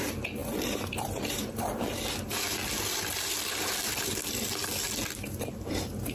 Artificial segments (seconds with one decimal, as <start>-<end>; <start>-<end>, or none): 0.0-2.6; 5.2-6.1